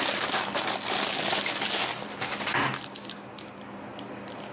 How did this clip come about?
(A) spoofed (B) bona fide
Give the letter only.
B